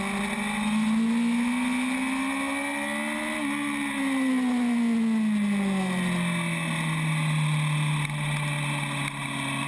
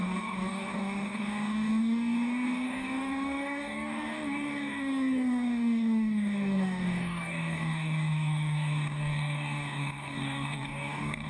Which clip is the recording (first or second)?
first